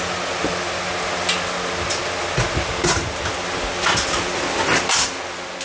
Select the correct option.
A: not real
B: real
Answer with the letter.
B